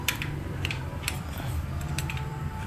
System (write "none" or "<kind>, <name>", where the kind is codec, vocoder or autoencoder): vocoder, BigVGAN v2